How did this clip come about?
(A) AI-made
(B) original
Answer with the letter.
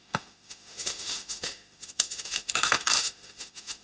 A